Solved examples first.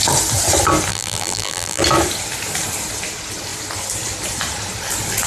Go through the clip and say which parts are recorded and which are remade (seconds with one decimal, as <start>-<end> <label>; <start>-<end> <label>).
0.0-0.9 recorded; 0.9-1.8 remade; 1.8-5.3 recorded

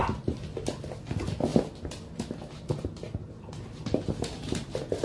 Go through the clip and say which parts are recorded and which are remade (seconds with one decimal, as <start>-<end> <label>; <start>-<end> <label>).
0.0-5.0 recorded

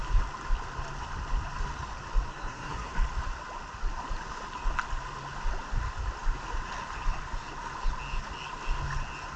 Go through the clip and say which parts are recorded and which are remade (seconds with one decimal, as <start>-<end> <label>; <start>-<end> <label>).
0.0-2.3 recorded; 2.3-2.9 remade; 2.9-9.4 recorded